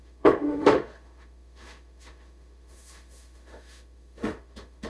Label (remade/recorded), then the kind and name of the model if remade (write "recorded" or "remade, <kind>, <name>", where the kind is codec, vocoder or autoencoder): remade, autoencoder, DAC-VAE